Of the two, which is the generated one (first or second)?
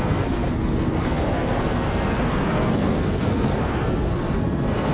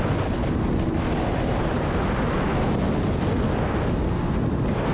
first